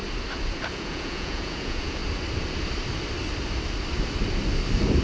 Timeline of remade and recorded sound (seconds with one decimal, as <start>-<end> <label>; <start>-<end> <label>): 0.0-0.7 recorded; 0.7-2.0 remade; 2.0-5.0 recorded